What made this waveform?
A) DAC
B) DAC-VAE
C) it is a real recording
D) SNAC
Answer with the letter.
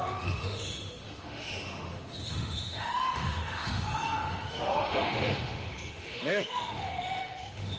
B